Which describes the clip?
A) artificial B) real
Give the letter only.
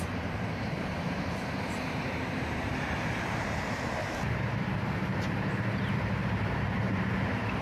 A